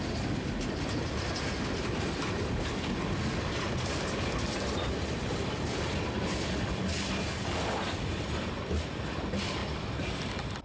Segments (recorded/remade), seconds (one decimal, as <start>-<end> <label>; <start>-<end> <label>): 0.0-9.6 recorded; 9.6-10.6 remade